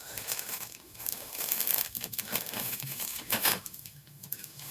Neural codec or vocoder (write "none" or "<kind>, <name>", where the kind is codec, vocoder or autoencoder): autoencoder, DAC-VAE